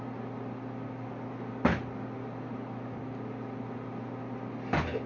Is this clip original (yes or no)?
yes